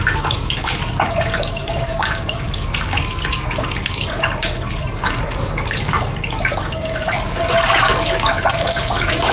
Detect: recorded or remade remade